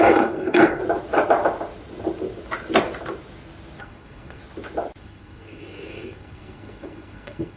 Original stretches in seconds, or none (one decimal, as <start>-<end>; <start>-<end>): 0.8-3.8; 4.4-5.0